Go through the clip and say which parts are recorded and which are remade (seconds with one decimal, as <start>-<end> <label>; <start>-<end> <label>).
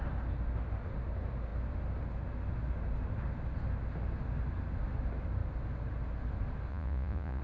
0.0-6.7 recorded; 6.7-7.4 remade